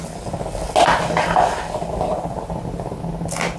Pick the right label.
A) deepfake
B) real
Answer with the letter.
B